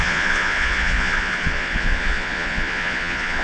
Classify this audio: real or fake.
fake